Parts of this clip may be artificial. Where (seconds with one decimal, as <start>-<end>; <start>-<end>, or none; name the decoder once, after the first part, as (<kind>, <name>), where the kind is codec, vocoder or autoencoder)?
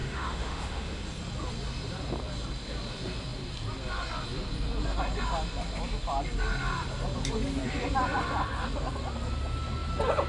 0.0-1.0 (autoencoder, DAC-VAE)